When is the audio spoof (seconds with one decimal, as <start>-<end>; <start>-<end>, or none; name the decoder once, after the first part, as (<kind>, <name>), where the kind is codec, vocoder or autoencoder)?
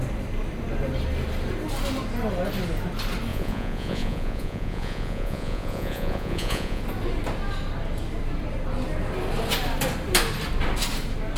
3.3-6.8 (vocoder, Vocos)